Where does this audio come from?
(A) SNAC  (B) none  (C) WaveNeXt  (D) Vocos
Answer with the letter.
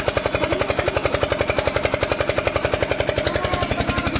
B